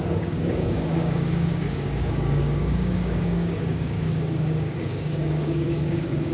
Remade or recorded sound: remade